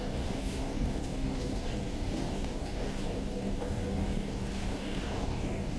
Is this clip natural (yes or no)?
no